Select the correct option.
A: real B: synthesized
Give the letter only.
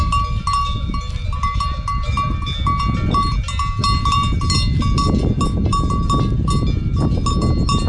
A